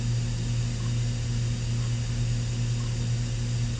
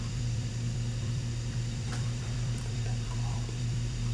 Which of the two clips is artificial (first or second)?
second